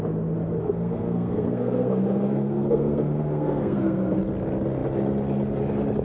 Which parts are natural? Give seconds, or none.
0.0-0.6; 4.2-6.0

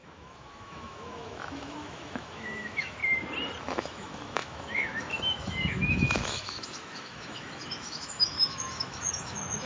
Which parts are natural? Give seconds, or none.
3.0-3.6

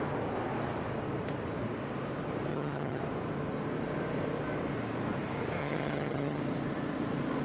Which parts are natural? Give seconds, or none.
0.0-2.5; 3.0-5.6; 6.4-7.4

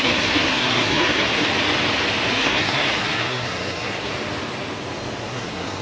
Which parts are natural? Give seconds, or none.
1.4-2.3; 4.1-5.2

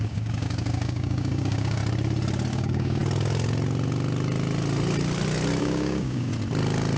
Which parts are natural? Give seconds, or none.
1.8-2.5; 3.0-5.6; 6.3-7.0

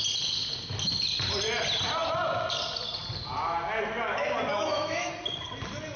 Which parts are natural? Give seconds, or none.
0.0-4.5; 5.1-6.0

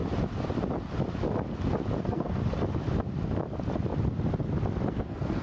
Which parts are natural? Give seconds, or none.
0.0-2.0; 2.4-4.9